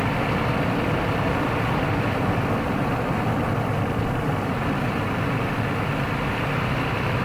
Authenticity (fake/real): real